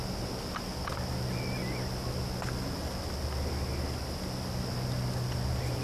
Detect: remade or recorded recorded